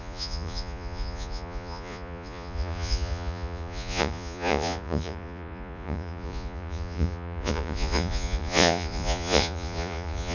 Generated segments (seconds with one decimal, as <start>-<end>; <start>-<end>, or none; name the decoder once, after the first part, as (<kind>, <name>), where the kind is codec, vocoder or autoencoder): 0.0-10.3 (vocoder, Vocos)